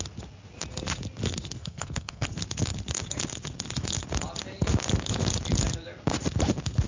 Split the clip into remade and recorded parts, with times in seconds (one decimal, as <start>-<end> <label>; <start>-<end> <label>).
0.0-1.6 recorded; 1.6-2.3 remade; 2.3-6.9 recorded